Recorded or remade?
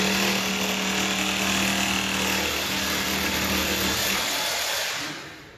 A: recorded